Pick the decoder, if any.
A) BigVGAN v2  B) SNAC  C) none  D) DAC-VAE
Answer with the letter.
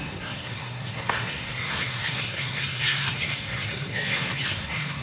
B